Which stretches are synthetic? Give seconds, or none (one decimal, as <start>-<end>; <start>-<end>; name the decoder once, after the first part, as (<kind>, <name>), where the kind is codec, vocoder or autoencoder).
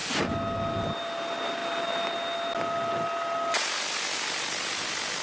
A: none